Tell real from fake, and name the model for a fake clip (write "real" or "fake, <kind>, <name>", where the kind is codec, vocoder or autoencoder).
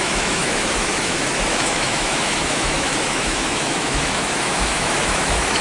fake, autoencoder, DAC-VAE